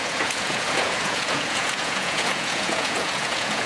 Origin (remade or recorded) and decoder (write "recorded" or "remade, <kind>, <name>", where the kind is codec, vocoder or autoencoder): remade, vocoder, Vocos